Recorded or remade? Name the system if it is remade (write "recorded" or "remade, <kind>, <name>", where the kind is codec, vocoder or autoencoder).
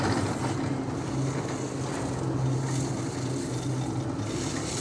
recorded